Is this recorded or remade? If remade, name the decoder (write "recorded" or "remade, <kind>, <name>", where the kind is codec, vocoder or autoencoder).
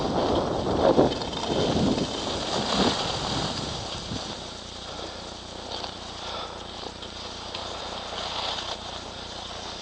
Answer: recorded